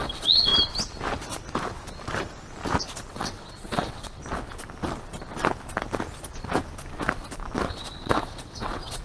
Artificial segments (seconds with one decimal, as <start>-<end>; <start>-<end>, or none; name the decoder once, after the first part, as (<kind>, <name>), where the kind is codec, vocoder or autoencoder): 0.0-0.5 (vocoder, WaveNeXt); 3.1-4.2; 7.7-9.0